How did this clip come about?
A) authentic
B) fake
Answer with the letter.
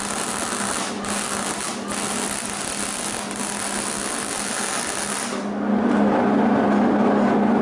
A